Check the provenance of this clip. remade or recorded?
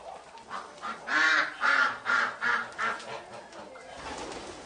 recorded